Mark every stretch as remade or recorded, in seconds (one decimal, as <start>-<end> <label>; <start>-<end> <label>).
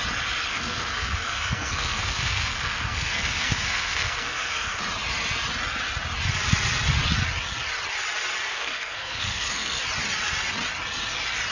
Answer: 0.0-0.5 recorded; 0.5-4.8 remade; 4.8-8.5 recorded; 8.5-9.8 remade; 9.8-11.5 recorded